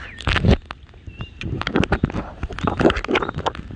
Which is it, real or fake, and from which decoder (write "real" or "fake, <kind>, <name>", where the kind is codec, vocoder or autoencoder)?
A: real